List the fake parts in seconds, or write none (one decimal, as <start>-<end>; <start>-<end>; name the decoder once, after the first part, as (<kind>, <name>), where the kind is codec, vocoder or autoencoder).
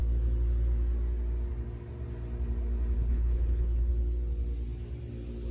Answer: 3.0-3.9 (codec, HILCodec)